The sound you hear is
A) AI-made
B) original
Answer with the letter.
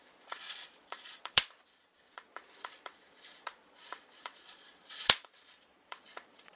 A